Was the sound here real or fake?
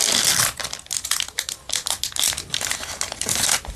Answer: real